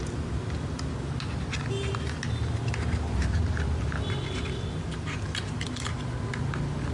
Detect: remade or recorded recorded